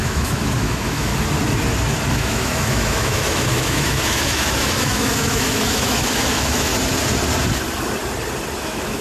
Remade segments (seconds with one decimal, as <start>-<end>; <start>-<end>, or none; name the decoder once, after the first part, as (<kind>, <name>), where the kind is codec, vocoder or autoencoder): 0.0-1.1 (autoencoder, DAC-VAE); 2.1-6.7; 8.6-9.0